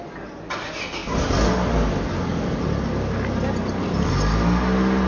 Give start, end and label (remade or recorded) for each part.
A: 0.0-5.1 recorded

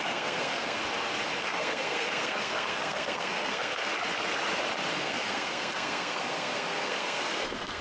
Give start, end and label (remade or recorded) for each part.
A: 0.0-0.8 remade; 0.8-1.4 recorded; 1.4-3.9 remade; 3.9-4.9 recorded; 4.9-7.8 remade

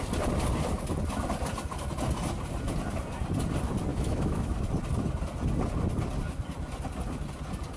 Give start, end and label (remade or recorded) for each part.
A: 0.0-3.9 recorded; 3.9-4.5 remade; 4.5-7.8 recorded